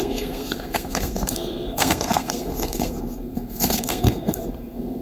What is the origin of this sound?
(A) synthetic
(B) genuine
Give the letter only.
A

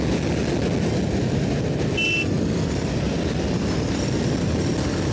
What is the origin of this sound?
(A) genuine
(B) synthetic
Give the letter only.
A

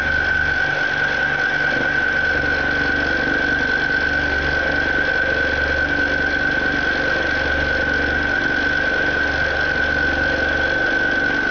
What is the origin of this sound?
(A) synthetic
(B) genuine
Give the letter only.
B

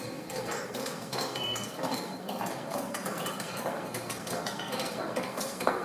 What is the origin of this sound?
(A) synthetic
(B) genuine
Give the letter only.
A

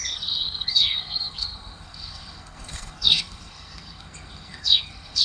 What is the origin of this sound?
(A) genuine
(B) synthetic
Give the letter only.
B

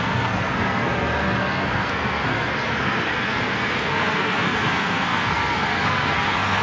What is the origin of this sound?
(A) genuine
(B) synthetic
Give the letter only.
B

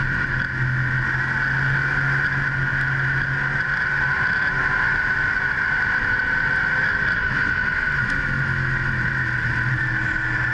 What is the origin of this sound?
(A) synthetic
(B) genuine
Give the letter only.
B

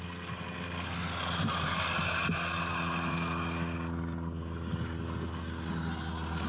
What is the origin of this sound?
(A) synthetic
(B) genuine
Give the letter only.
B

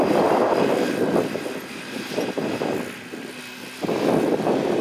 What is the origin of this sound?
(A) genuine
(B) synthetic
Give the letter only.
A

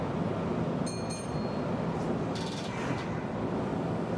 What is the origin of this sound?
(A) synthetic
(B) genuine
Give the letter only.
B